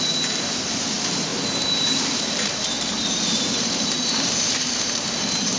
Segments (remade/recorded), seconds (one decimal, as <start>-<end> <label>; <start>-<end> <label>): 0.0-5.6 remade